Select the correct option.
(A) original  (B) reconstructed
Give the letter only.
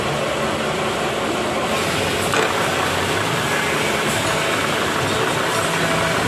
A